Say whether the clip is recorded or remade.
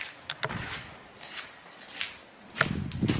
recorded